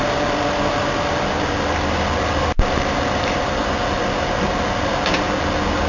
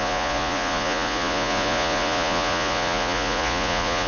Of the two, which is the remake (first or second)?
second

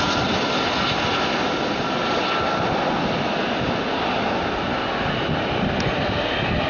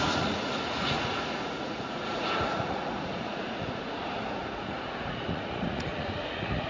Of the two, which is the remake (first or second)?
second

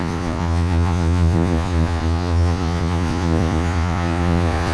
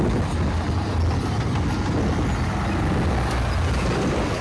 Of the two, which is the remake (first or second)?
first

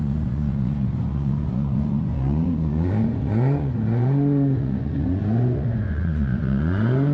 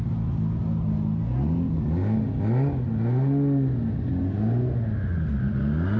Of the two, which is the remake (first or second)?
first